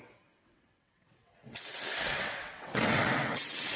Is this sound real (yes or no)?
no